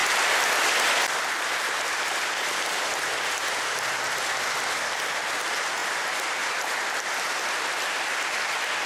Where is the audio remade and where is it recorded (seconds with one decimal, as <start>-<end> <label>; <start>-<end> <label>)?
0.0-8.9 recorded